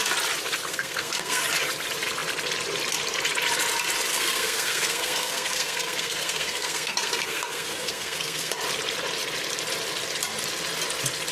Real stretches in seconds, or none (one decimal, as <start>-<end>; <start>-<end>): 0.0-0.7; 1.4-4.1; 8.5-11.3